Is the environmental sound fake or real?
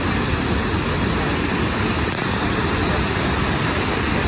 real